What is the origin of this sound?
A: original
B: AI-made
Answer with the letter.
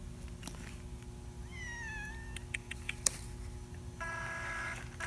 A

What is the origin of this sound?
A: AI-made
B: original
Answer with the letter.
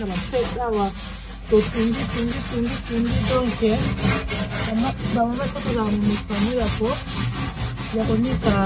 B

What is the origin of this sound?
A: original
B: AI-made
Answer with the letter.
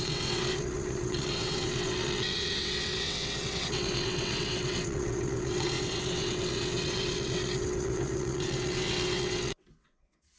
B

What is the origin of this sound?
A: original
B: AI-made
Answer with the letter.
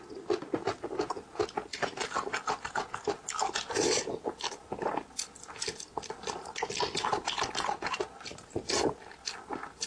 A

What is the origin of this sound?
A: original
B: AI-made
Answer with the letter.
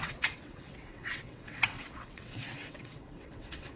B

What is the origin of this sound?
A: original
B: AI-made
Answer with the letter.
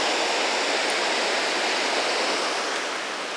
A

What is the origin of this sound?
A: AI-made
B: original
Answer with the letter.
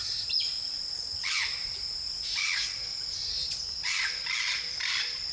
B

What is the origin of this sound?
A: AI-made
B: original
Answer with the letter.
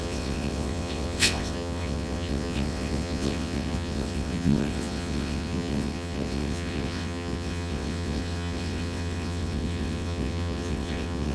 A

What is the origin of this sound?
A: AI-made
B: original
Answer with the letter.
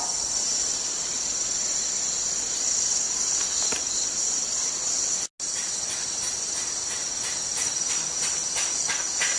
B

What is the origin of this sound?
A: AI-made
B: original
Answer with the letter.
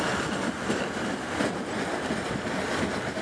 B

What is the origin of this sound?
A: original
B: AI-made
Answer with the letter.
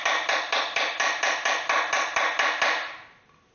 A